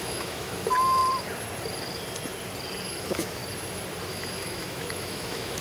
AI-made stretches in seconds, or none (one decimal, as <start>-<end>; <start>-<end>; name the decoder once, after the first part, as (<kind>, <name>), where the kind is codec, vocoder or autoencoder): 0.0-1.0 (autoencoder, DAC-VAE); 3.0-3.4; 4.1-5.6